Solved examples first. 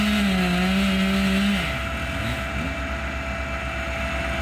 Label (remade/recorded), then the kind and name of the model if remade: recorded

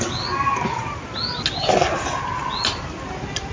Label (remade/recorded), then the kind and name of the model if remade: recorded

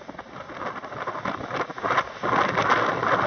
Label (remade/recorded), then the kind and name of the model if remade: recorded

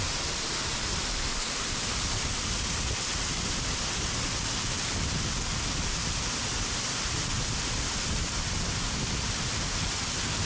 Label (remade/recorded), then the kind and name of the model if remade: recorded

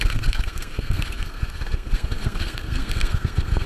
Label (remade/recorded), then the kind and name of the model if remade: remade, codec, SNAC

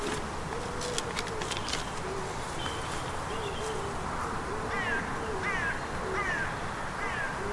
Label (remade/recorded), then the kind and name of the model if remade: recorded